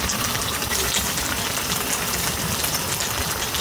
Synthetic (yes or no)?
yes